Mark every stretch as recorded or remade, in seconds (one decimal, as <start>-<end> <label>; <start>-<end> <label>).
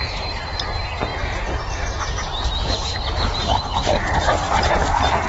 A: 0.0-5.3 recorded